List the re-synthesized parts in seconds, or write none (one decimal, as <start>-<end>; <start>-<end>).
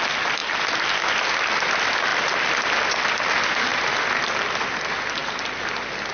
none